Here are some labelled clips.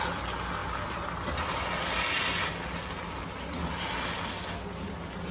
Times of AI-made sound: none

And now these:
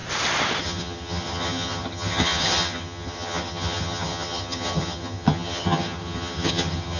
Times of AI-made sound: 0.6-7.0